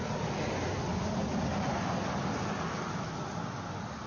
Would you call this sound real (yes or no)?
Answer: yes